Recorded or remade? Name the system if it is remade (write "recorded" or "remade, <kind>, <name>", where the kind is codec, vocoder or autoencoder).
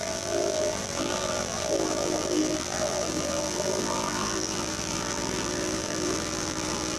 remade, vocoder, BigVGAN v2